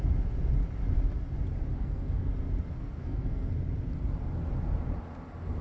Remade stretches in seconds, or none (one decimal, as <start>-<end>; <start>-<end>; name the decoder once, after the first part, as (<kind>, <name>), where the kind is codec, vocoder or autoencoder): 1.8-2.3 (codec, SNAC); 2.8-3.5